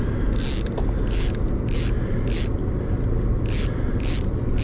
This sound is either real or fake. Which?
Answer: real